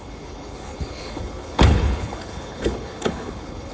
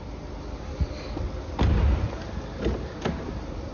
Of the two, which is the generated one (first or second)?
first